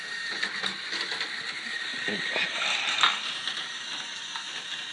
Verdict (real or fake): real